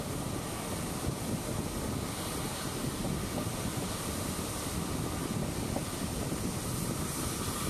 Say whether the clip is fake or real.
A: fake